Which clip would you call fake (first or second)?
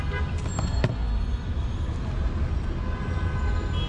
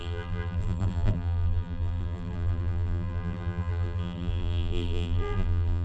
second